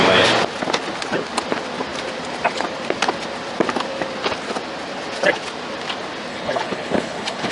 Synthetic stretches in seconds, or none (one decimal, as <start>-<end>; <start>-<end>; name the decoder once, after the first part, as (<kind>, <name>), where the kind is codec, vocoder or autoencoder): 6.3-7.5 (codec, HILCodec)